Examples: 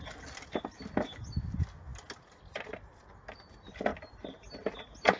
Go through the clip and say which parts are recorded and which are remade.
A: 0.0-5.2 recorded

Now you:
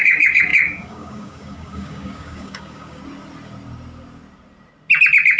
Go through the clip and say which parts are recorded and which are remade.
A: 0.0-3.0 remade; 3.0-5.4 recorded

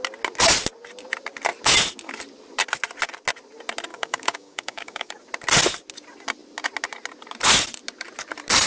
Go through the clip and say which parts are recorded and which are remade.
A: 0.0-3.9 recorded; 3.9-5.1 remade; 5.1-8.7 recorded

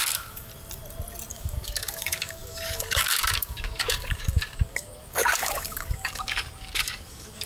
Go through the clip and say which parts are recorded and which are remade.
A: 0.0-0.5 remade; 0.5-1.3 recorded; 1.3-7.5 remade

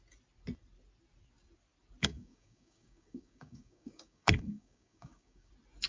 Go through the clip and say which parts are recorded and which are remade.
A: 0.0-2.0 recorded; 2.0-5.5 remade; 5.5-5.9 recorded

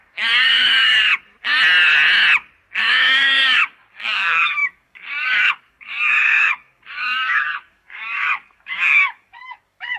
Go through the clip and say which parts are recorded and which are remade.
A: 0.0-1.1 remade; 1.1-2.8 recorded; 2.8-10.0 remade

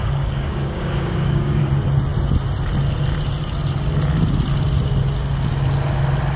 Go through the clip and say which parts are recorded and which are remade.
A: 0.0-1.6 remade; 1.6-6.4 recorded